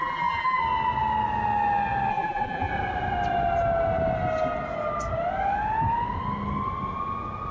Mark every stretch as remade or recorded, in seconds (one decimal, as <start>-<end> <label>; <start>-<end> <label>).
0.0-0.6 remade; 0.6-2.1 recorded; 2.1-2.7 remade; 2.7-7.5 recorded